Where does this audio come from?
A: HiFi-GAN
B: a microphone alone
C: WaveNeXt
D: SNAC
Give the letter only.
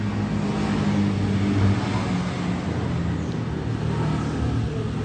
B